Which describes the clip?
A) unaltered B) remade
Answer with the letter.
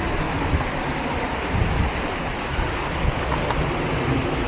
A